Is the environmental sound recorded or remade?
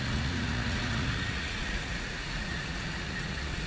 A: remade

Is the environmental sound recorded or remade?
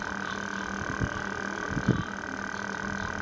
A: recorded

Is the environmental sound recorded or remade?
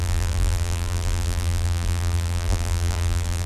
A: remade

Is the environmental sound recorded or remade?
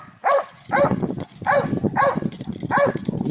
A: remade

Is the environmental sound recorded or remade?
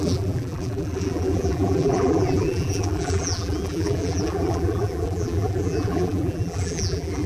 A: remade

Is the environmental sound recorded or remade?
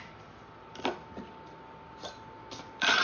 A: remade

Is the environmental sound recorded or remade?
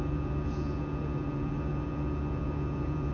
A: remade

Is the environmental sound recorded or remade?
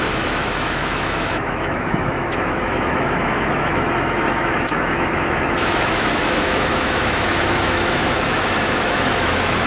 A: remade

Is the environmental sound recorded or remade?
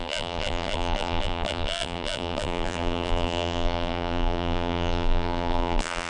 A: remade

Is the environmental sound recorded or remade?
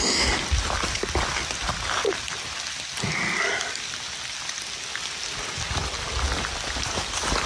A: recorded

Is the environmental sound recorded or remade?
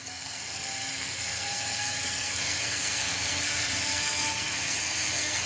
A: remade